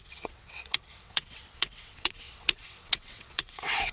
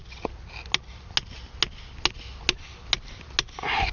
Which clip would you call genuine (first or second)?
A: second